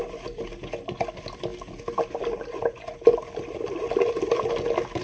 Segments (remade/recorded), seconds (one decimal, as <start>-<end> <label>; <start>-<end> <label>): 0.0-5.0 recorded